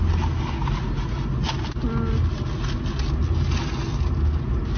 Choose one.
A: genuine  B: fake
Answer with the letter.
A